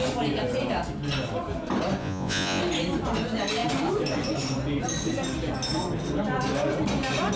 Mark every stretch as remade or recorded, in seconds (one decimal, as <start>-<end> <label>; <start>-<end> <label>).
0.0-2.0 recorded; 2.0-2.6 remade; 2.6-7.4 recorded